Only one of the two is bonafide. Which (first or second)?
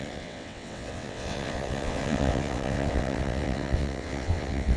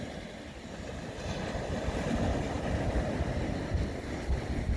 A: second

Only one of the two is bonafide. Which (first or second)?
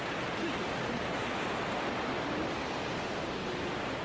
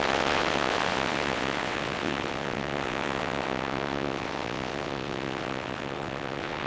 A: first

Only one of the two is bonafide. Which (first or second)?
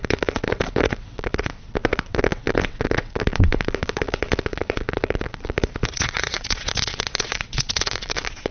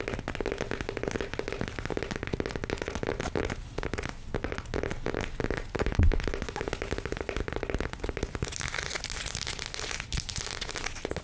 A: second